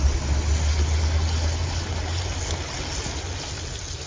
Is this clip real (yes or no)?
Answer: yes